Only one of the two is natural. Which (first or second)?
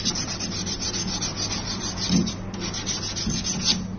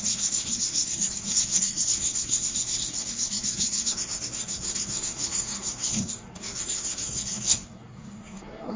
first